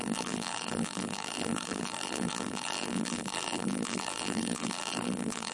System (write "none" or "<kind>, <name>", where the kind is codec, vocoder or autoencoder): vocoder, BigVGAN v2